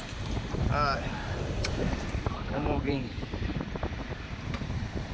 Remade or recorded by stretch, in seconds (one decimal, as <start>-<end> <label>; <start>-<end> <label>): 0.0-0.7 remade; 0.7-1.4 recorded; 1.4-3.5 remade; 3.5-4.1 recorded; 4.1-5.1 remade